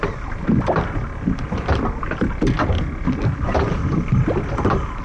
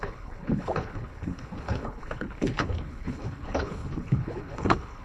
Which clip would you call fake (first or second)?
second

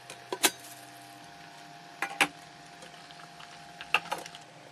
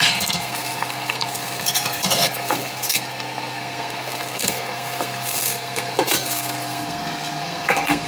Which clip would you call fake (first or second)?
second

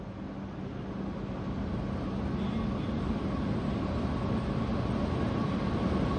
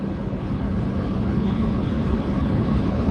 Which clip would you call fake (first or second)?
second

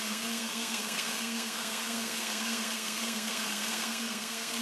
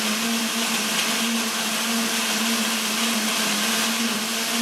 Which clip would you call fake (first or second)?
first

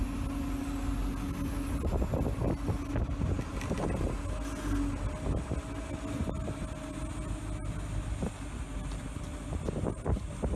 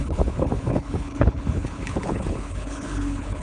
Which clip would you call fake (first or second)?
second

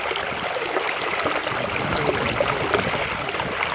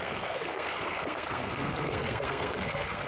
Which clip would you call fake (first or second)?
second